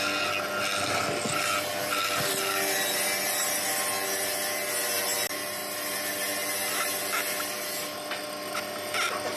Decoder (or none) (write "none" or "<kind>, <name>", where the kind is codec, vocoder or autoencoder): none